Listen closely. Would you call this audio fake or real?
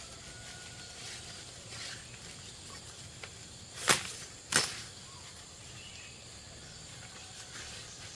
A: real